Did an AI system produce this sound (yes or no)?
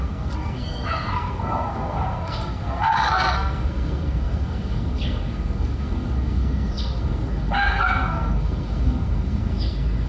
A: yes